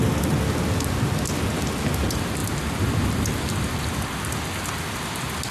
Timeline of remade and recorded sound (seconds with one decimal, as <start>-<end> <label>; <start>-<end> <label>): 0.0-5.5 recorded